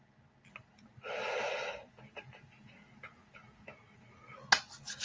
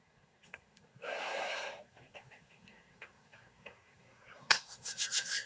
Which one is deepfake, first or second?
second